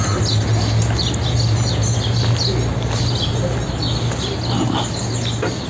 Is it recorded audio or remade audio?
recorded